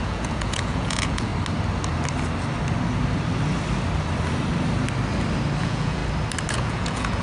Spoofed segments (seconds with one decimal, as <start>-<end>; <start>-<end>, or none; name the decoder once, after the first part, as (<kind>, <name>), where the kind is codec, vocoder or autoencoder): 0.0-1.3 (vocoder, Vocos); 5.6-6.0; 6.5-7.2